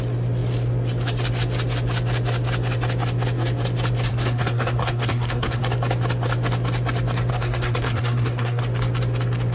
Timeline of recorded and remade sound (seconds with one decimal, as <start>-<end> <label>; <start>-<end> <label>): 0.0-4.1 recorded; 4.1-5.6 remade; 5.6-7.3 recorded; 7.3-8.6 remade; 8.6-9.5 recorded